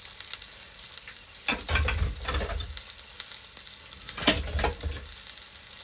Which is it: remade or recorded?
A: recorded